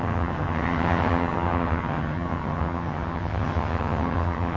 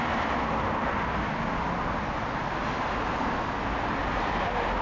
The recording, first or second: second